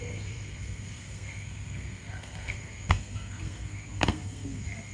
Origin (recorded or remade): remade